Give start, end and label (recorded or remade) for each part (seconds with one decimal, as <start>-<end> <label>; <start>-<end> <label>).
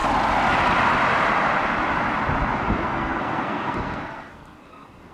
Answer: 0.0-2.6 recorded; 2.6-5.1 remade